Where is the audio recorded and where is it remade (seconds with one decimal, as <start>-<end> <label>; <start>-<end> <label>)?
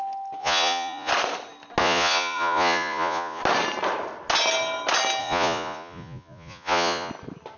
0.0-0.4 recorded; 0.4-1.1 remade; 1.1-1.8 recorded; 1.8-3.4 remade; 3.4-5.2 recorded; 5.2-7.1 remade; 7.1-7.6 recorded